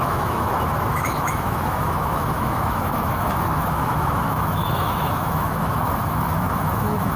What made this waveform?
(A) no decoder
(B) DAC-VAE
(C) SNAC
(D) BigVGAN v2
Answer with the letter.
B